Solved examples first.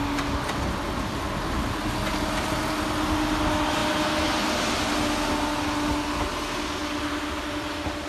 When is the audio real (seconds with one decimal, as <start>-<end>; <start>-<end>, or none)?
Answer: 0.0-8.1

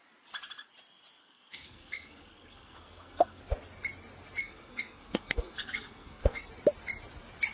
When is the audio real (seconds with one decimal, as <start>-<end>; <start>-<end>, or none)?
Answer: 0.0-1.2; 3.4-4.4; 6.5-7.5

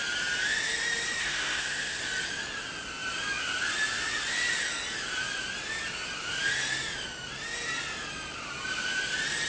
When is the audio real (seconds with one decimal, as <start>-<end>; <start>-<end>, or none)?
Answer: 0.0-1.2; 2.0-9.5

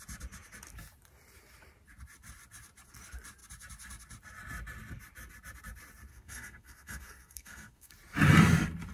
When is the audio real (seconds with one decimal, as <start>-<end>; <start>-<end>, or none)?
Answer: 0.0-6.1; 7.9-8.9

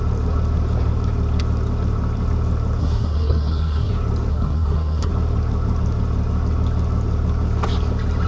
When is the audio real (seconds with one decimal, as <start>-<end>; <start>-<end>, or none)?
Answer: 0.0-2.8; 3.9-4.3; 5.1-8.3